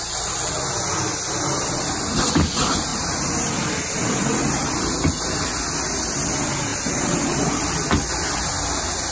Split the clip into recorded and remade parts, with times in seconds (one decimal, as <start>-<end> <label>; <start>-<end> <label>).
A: 0.0-2.9 recorded; 2.9-3.7 remade; 3.7-6.7 recorded; 6.7-7.5 remade; 7.5-9.1 recorded

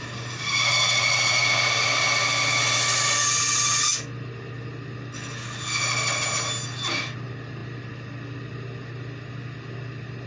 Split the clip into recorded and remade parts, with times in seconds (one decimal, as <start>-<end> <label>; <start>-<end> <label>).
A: 0.0-10.3 recorded

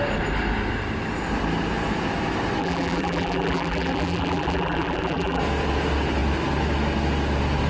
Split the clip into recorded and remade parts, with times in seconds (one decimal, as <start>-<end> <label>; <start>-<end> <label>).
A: 0.0-2.6 recorded; 2.6-5.4 remade; 5.4-7.7 recorded

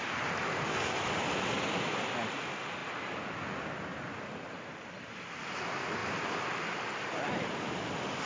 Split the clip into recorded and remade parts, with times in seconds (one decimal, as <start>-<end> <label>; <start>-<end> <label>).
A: 0.0-3.9 recorded; 3.9-5.3 remade; 5.3-6.0 recorded; 6.0-7.2 remade; 7.2-8.3 recorded

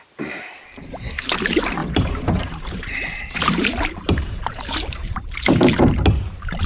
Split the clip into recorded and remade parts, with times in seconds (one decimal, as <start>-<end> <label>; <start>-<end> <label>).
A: 0.0-6.7 remade

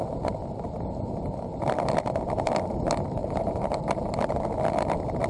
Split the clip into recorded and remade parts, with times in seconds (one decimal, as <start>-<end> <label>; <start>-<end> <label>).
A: 0.0-3.2 recorded; 3.2-4.4 remade; 4.4-5.3 recorded

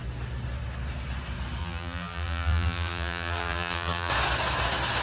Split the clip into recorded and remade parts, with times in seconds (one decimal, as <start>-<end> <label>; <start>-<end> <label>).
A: 0.0-1.6 recorded; 1.6-4.1 remade; 4.1-5.0 recorded

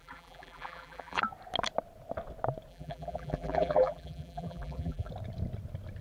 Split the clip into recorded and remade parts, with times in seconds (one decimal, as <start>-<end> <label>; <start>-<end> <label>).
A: 0.0-1.2 remade; 1.2-2.7 recorded; 2.7-5.1 remade; 5.1-6.0 recorded